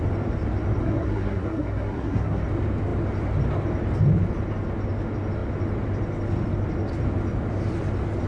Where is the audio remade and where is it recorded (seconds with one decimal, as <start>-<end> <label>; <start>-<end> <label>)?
0.0-0.8 recorded; 0.8-2.4 remade; 2.4-8.3 recorded

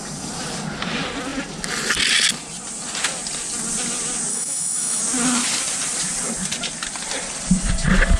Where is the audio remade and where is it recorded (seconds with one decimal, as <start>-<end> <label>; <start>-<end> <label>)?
0.0-4.3 recorded; 4.3-5.0 remade; 5.0-8.2 recorded

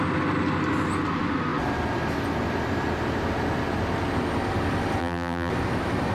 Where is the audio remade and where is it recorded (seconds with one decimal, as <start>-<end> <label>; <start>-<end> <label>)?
0.0-5.0 recorded; 5.0-5.5 remade; 5.5-6.1 recorded

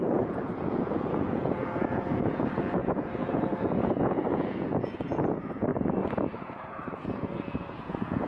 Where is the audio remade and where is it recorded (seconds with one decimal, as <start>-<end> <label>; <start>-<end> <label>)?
0.0-5.7 remade; 5.7-6.4 recorded; 6.4-8.3 remade

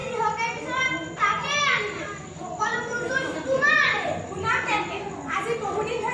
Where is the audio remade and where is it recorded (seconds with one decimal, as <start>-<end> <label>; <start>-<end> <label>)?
0.0-6.1 recorded

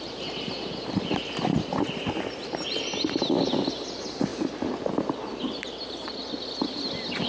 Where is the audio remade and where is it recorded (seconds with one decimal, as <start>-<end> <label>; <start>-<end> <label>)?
0.0-7.3 recorded

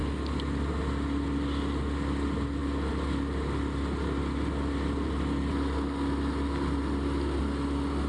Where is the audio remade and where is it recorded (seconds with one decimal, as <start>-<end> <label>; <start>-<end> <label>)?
0.0-8.1 recorded

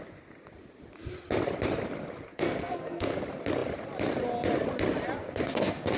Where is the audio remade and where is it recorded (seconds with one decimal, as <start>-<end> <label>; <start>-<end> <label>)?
0.0-2.3 recorded; 2.3-3.2 remade; 3.2-5.2 recorded; 5.2-6.0 remade